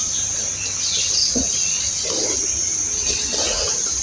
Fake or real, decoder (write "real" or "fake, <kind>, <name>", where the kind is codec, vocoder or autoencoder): real